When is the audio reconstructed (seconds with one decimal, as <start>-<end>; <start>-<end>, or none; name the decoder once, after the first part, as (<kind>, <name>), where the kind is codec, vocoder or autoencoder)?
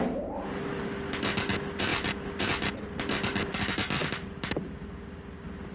none